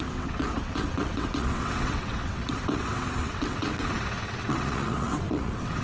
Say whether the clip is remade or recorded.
remade